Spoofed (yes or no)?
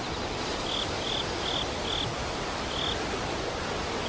no